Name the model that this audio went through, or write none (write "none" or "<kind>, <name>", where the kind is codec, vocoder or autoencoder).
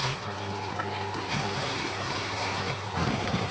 codec, SNAC